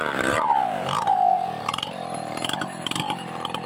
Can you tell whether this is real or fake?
fake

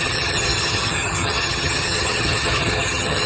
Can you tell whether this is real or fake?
fake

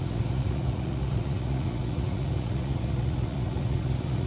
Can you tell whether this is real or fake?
fake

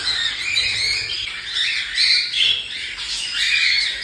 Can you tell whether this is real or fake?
fake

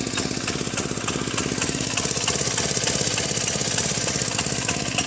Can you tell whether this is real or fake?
real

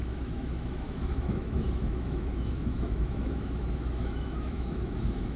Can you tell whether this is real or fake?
fake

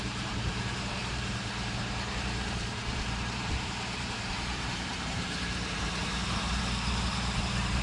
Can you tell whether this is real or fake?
fake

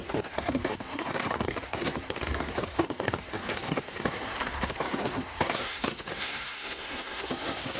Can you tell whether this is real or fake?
fake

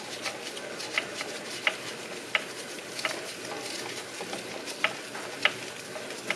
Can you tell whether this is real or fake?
real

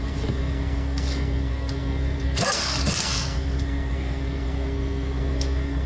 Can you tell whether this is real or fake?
fake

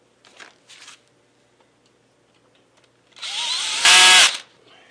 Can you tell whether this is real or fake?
real